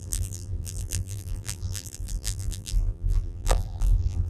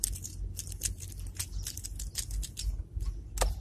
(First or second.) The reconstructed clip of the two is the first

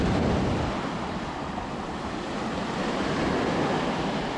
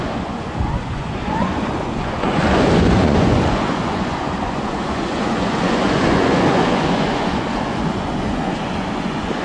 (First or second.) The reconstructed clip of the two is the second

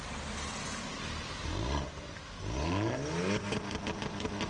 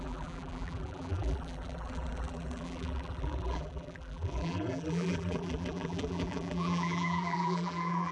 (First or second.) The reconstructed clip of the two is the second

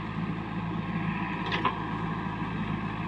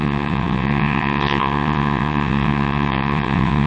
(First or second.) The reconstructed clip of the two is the second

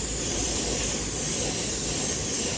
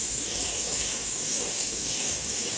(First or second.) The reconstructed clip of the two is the second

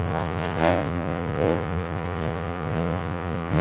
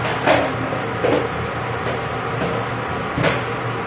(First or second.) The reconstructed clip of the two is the first